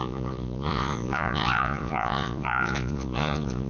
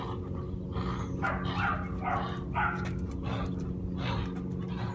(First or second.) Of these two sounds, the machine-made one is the first